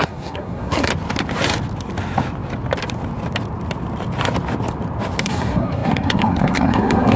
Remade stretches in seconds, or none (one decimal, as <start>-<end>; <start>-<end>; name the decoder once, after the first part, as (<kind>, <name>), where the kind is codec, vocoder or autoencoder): 0.0-0.9 (codec, SNAC); 5.2-7.2